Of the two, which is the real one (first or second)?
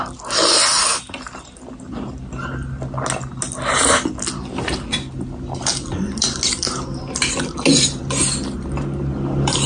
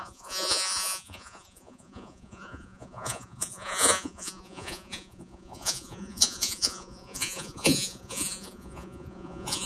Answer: first